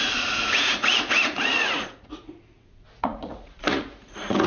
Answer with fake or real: fake